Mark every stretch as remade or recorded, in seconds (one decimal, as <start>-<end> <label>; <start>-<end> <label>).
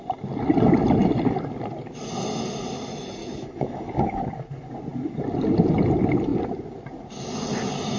0.0-3.2 recorded; 3.2-4.2 remade; 4.2-8.0 recorded